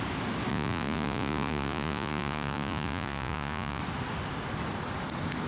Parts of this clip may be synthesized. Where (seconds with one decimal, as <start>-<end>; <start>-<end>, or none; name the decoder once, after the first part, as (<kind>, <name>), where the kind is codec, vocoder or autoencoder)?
0.5-3.8 (vocoder, Vocos)